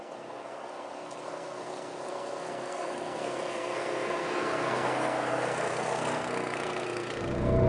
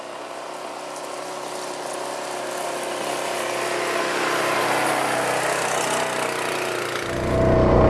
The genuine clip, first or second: second